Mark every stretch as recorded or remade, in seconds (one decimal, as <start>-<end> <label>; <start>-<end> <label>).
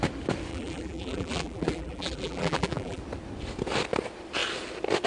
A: 0.0-0.5 recorded; 0.5-3.0 remade; 3.0-5.1 recorded